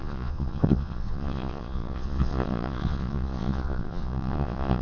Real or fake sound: fake